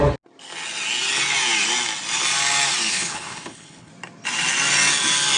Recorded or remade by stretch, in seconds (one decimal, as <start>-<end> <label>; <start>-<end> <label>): 0.0-2.9 recorded; 2.9-3.9 remade; 3.9-5.4 recorded